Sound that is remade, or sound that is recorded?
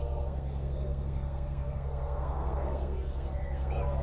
remade